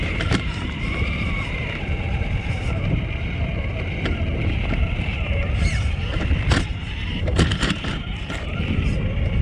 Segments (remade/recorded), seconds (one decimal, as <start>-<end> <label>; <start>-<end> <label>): 0.0-3.5 remade; 3.5-5.4 recorded; 5.4-6.3 remade; 6.3-6.7 recorded; 6.7-8.0 remade; 8.0-9.4 recorded